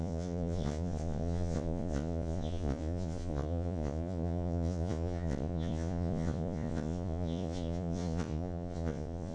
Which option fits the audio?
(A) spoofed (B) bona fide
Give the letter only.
A